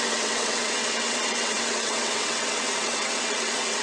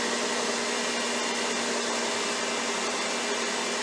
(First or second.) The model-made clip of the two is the first